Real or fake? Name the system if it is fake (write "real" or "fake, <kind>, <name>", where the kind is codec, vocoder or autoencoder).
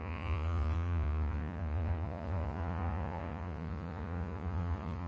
fake, vocoder, Vocos